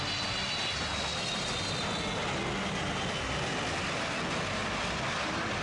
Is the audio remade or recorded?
recorded